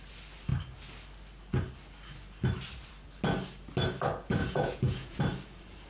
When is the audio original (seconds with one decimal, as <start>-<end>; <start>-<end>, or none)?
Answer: 0.0-4.4; 5.2-5.9

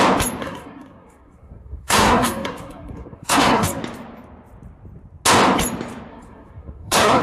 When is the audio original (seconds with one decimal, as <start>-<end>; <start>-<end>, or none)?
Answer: 0.0-0.4; 3.8-6.1